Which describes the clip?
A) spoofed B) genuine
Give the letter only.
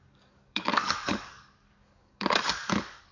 A